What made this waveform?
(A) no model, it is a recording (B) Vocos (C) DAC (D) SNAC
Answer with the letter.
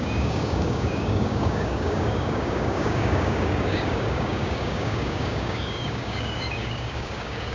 C